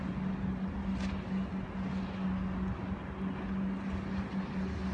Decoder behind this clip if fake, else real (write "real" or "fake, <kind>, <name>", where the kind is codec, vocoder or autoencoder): real